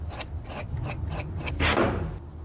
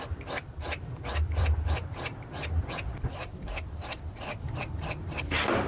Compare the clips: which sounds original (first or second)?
first